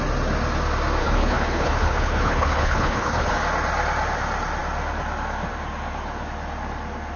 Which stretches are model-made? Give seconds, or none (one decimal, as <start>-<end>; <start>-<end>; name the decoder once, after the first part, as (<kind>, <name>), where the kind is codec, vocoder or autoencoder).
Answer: 1.0-3.3 (codec, HILCodec)